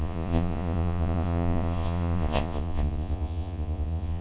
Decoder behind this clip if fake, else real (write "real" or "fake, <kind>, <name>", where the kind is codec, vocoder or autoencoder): fake, vocoder, Vocos